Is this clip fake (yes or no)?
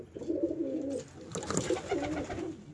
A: no